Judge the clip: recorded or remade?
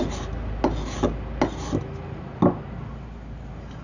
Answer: recorded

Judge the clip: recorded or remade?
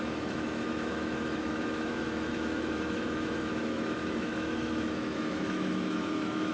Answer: remade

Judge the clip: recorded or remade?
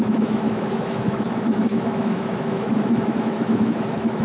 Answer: remade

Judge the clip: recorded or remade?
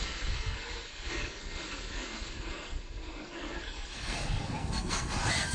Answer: remade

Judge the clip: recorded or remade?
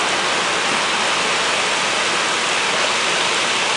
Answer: recorded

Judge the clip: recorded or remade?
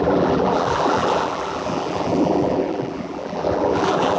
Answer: remade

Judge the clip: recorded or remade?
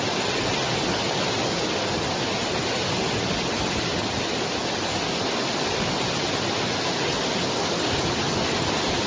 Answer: recorded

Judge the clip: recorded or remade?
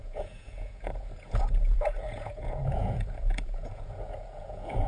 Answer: remade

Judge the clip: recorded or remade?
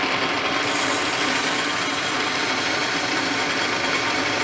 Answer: recorded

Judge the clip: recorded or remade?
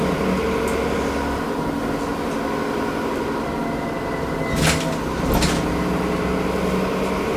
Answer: recorded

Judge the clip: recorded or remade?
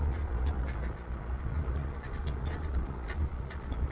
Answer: remade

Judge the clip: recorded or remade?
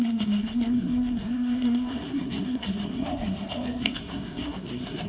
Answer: remade